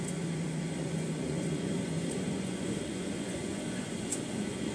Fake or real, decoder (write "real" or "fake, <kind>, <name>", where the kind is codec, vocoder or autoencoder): fake, vocoder, Vocos